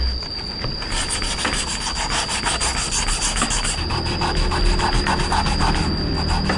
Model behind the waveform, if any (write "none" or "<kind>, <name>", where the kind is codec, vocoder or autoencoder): none